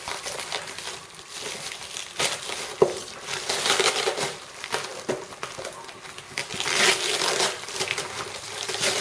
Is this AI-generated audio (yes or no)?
no